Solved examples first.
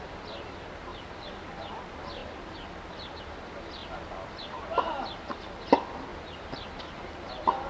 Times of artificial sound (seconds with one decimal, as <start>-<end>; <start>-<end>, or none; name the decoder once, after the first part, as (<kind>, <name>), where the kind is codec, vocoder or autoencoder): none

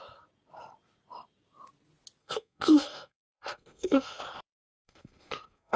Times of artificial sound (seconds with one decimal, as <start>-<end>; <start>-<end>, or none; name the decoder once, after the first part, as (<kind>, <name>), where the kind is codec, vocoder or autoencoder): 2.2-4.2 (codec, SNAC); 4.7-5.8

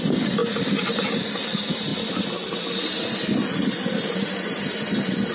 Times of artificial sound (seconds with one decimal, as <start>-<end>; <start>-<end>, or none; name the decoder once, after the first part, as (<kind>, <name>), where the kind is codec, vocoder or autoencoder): 1.9-2.7 (vocoder, BigVGAN v2)

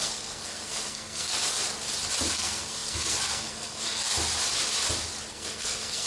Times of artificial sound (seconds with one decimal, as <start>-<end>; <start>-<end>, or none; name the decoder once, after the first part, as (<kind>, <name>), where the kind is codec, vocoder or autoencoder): 0.0-1.6 (codec, SNAC); 2.3-4.1; 5.3-6.1

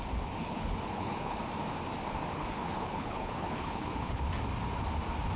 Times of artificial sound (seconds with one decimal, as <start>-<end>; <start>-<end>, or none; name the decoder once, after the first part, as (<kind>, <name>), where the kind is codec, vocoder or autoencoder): 0.4-1.4 (codec, HILCodec); 2.3-4.2

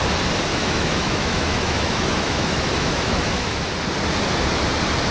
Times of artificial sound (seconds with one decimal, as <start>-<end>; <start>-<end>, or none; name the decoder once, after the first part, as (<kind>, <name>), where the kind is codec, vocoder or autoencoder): 0.5-3.6 (autoencoder, DAC-VAE)

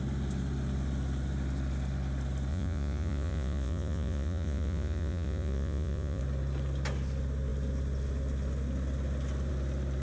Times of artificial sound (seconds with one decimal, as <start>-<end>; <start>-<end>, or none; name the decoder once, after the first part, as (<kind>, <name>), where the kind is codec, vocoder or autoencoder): 2.5-6.2 (vocoder, Vocos)